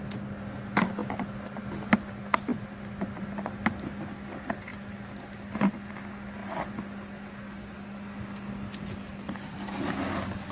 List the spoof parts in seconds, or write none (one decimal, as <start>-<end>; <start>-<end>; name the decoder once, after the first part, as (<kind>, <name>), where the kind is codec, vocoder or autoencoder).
none